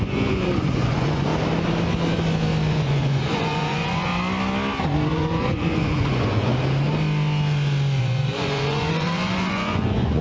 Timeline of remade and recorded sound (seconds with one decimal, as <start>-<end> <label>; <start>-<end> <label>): 0.0-1.3 remade; 1.3-2.7 recorded; 2.7-4.1 remade; 4.1-5.1 recorded; 5.1-6.5 remade; 6.5-8.0 recorded; 8.0-10.2 remade